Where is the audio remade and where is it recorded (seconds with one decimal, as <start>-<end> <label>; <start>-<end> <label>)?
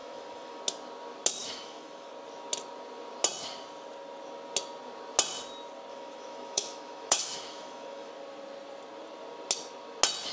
0.0-0.6 remade; 0.6-1.4 recorded; 1.4-2.1 remade; 2.1-5.9 recorded; 5.9-8.1 remade; 8.1-10.3 recorded